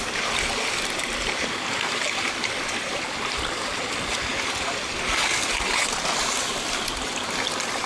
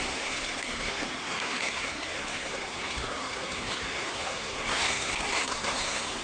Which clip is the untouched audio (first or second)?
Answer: first